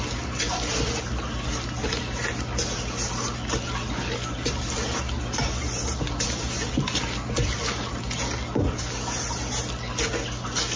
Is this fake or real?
real